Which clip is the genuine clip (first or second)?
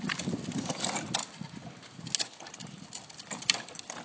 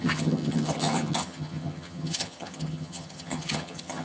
first